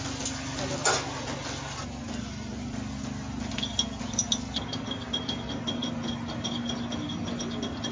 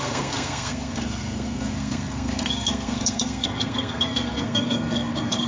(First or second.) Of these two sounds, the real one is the first